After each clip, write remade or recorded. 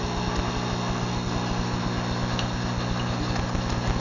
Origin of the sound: recorded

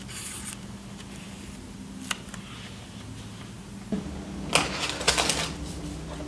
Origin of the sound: recorded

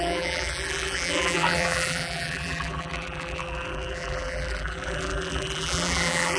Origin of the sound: remade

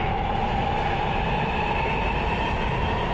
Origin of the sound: recorded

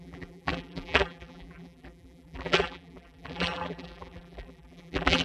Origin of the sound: remade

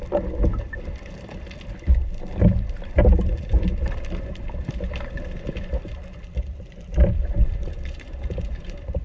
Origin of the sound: remade